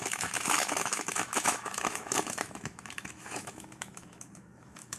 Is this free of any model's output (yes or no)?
no